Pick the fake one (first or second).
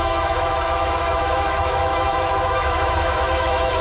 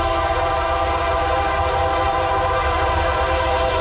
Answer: first